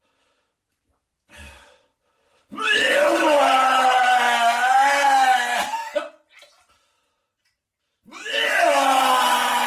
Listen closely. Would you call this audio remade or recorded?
recorded